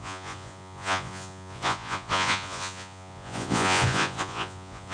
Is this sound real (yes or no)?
no